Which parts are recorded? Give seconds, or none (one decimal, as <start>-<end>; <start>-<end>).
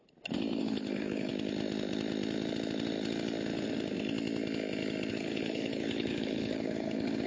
0.0-0.6; 1.3-5.1